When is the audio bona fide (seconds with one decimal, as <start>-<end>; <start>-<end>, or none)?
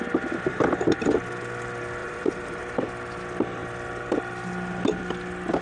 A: 0.0-2.0; 2.6-5.6